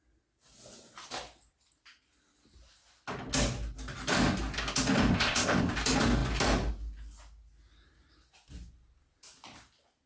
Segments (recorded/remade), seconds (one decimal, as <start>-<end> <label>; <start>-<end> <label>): 0.0-5.1 recorded; 5.1-5.7 remade; 5.7-10.1 recorded